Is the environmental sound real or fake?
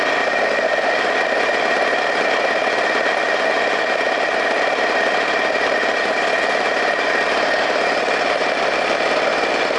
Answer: real